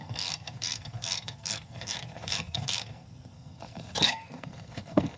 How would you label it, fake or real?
fake